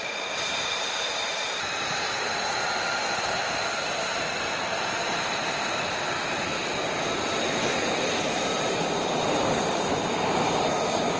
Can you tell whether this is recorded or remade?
remade